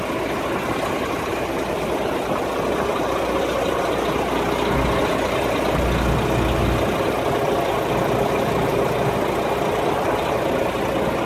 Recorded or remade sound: recorded